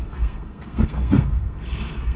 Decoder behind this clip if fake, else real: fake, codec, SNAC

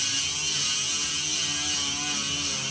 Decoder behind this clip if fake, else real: real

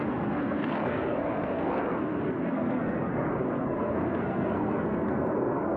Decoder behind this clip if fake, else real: fake, codec, SNAC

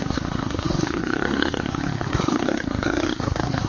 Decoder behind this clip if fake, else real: fake, codec, SNAC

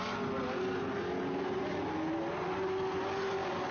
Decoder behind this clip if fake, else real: real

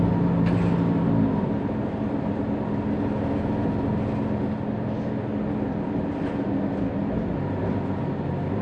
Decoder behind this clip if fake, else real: real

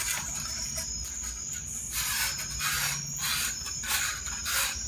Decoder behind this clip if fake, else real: real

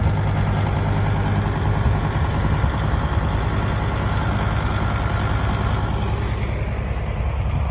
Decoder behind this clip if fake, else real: real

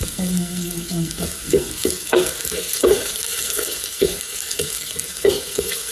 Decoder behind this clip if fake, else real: fake, codec, SNAC